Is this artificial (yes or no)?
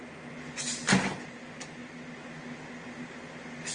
no